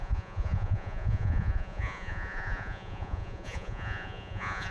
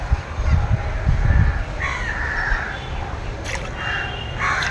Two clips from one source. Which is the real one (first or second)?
second